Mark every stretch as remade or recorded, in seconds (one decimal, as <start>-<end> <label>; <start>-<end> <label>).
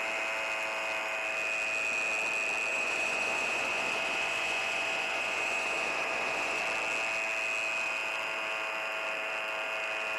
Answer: 0.0-2.7 recorded; 2.7-6.6 remade; 6.6-10.2 recorded